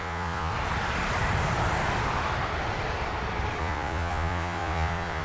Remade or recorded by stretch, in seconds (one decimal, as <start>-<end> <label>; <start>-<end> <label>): 0.0-0.5 remade; 0.5-3.6 recorded; 3.6-5.2 remade